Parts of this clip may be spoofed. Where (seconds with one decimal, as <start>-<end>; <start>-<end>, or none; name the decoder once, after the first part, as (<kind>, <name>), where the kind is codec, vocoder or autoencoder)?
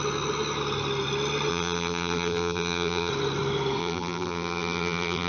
1.5-3.1 (vocoder, BigVGAN v2); 3.8-5.3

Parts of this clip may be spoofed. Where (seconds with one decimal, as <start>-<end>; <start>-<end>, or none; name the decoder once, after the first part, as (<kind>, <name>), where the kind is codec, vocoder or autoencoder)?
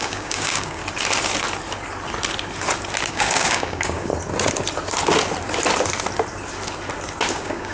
0.0-0.8 (codec, DAC); 3.1-4.1; 7.3-7.7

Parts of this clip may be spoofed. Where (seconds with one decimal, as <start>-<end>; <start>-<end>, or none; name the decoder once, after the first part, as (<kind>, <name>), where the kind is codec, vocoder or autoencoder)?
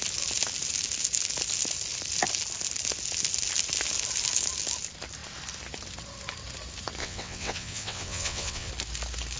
7.0-8.7 (vocoder, WaveNeXt)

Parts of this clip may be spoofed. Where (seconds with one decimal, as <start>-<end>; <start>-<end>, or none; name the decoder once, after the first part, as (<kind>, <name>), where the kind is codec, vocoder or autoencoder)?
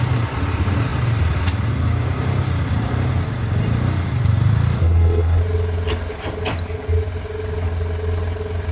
4.8-5.4 (codec, SNAC)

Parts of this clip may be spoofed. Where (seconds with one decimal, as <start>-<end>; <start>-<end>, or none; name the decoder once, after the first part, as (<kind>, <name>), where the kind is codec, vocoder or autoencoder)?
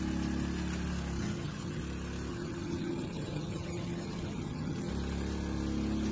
1.2-1.8 (vocoder, HiFi-GAN); 2.3-4.9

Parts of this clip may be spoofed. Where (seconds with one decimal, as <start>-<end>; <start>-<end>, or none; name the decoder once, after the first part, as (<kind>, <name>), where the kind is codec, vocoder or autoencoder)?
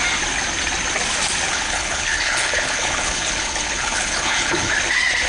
1.5-4.7 (codec, HILCodec)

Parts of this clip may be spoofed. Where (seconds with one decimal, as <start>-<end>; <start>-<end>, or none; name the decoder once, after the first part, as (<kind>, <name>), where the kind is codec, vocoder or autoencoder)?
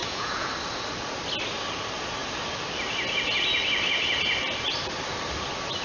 0.0-0.5 (vocoder, Vocos)